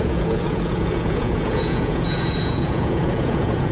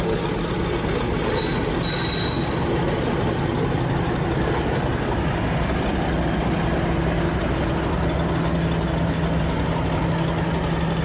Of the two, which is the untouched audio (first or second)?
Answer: second